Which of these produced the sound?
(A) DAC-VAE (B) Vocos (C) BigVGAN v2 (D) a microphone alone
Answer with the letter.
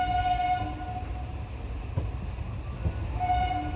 D